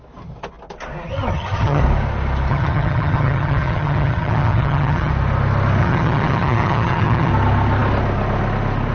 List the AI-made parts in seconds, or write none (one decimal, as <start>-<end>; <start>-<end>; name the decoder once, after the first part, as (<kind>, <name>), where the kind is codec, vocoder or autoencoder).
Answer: 1.1-1.8 (vocoder, HiFi-GAN); 2.5-5.1; 5.8-7.3